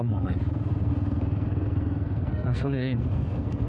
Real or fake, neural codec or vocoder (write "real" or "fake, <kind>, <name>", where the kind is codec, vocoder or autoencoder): fake, codec, SNAC